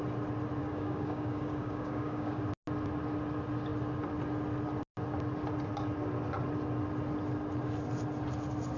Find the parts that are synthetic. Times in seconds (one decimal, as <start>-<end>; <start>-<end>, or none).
0.6-2.4